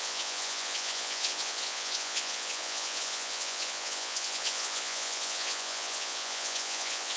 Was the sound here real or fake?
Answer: fake